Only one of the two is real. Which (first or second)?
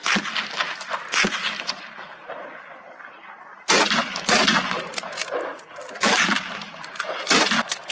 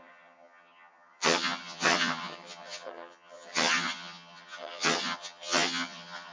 first